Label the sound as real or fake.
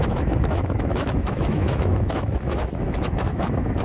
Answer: fake